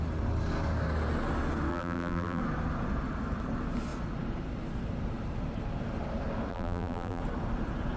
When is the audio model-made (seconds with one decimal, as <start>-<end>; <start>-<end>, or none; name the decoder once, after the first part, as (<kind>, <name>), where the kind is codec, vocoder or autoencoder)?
1.7-2.4 (vocoder, BigVGAN v2); 6.5-7.2